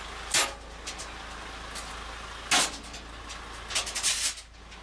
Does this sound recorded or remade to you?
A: recorded